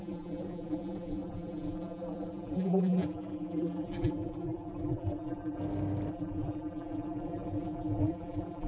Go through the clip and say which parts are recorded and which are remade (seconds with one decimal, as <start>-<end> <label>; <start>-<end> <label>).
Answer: 0.0-5.6 remade; 5.6-6.1 recorded; 6.1-8.7 remade